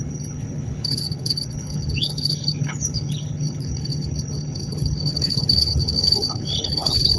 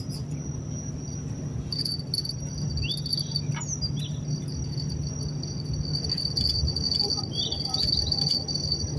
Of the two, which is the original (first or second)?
second